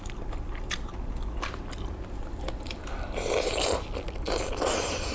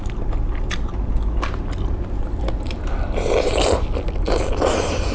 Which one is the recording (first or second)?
second